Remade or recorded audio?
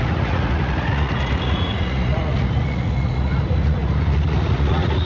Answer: remade